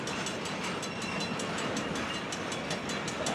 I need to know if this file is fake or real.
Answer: real